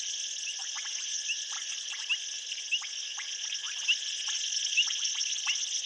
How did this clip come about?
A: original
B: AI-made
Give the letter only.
A